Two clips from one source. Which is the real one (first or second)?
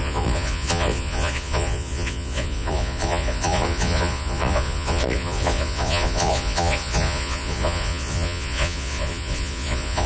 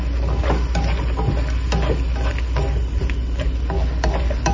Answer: second